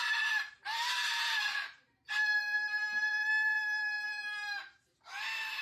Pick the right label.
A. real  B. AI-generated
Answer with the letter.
B